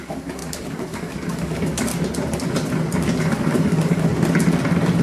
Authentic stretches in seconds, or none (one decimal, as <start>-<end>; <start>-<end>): 1.9-3.2; 4.1-5.0